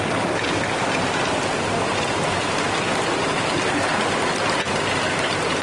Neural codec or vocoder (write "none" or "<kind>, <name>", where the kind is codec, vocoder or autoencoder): vocoder, BigVGAN v2